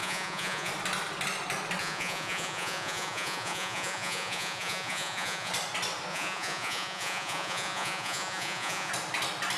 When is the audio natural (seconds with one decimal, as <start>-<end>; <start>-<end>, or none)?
0.7-1.8; 5.5-6.1; 8.9-9.6

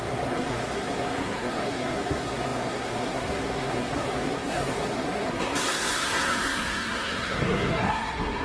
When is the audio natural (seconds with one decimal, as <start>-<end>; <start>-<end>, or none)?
none

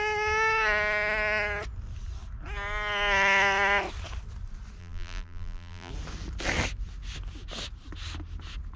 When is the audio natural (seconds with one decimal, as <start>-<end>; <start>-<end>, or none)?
0.0-4.8; 5.9-8.8

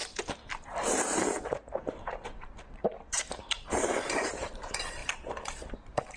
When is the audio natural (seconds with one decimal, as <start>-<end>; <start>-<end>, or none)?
5.0-5.7

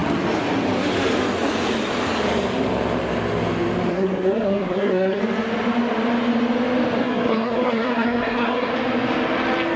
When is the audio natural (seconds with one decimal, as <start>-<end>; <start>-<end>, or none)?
0.0-3.9; 5.2-7.0; 8.7-9.8

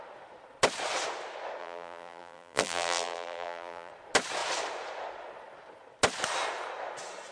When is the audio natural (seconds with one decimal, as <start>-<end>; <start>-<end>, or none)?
0.0-1.6; 3.9-7.3

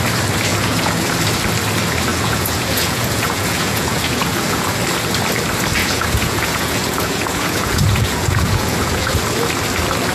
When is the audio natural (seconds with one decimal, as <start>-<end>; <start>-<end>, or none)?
0.0-0.5; 1.1-2.1; 4.8-5.8; 9.2-10.1